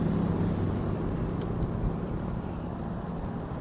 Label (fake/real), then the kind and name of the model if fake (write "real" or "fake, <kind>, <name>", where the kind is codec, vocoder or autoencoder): real